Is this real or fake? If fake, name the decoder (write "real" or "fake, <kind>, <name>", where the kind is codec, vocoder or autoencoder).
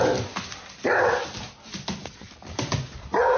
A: real